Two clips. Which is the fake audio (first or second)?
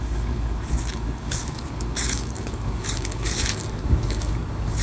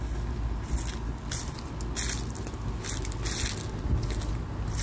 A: first